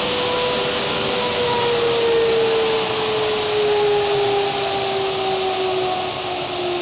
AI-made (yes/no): no